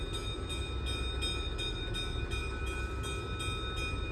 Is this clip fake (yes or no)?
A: no